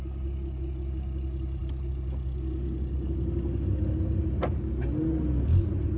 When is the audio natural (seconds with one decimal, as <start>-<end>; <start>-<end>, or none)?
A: 0.0-6.0